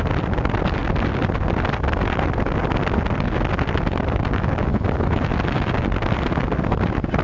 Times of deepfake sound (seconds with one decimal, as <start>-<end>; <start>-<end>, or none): 4.7-5.3